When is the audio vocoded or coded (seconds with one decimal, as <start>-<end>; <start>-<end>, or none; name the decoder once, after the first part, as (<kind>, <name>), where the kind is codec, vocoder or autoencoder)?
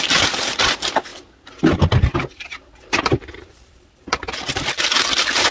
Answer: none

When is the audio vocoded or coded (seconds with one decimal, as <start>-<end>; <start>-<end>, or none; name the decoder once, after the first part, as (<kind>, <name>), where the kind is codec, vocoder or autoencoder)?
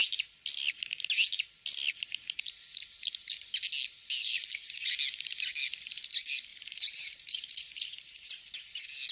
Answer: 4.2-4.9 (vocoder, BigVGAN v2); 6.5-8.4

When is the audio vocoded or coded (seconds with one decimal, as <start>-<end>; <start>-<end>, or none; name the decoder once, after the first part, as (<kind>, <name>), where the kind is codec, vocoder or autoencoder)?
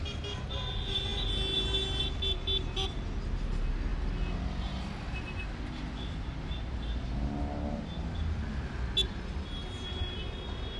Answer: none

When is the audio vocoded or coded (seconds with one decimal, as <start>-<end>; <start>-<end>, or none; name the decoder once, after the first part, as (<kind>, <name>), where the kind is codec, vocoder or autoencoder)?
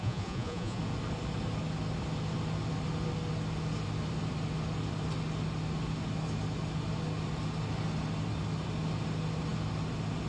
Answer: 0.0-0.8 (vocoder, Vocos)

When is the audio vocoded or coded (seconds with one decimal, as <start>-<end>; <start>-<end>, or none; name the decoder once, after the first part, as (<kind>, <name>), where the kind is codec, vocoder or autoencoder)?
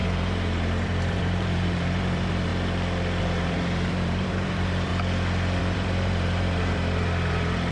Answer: 0.0-2.5 (vocoder, BigVGAN v2); 3.2-4.9; 5.6-7.7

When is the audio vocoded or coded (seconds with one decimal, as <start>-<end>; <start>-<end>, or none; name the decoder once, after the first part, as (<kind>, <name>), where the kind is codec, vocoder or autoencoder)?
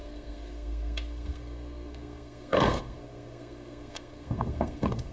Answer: 0.0-5.1 (codec, SNAC)